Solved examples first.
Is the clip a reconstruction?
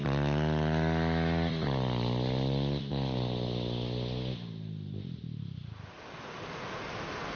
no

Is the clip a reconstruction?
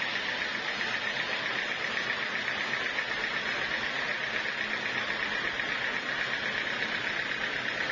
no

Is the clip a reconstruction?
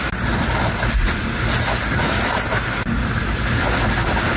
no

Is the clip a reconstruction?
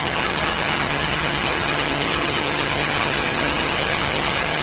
yes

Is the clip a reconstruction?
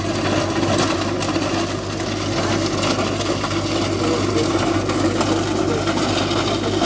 no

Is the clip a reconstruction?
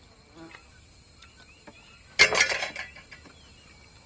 no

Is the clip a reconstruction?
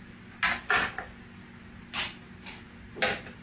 no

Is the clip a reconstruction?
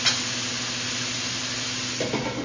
no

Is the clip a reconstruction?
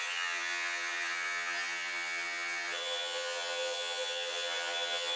yes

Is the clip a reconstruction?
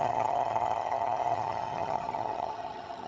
yes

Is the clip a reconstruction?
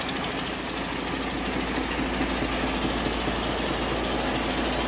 no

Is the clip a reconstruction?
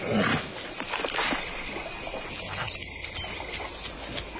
no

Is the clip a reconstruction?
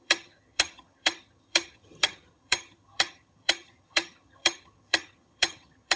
yes